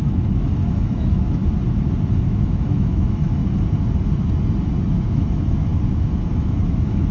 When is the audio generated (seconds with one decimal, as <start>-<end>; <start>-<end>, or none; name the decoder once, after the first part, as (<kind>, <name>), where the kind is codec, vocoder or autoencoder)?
0.0-1.4 (autoencoder, DAC-VAE); 2.1-3.4; 4.8-5.7; 6.3-7.1